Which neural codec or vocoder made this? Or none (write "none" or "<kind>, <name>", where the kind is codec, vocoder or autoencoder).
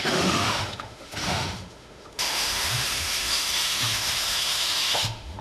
autoencoder, DAC-VAE